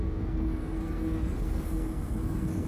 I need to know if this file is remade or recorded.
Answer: remade